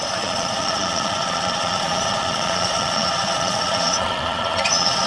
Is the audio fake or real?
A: fake